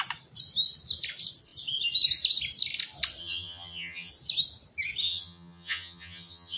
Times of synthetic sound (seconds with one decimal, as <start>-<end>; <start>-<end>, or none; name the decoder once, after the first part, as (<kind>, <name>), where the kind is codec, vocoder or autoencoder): 3.2-4.1 (vocoder, HiFi-GAN); 5.0-6.6